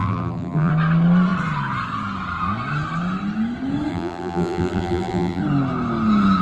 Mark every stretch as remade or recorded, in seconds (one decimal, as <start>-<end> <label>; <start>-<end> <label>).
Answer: 0.0-0.7 remade; 0.7-3.9 recorded; 3.9-5.4 remade; 5.4-6.4 recorded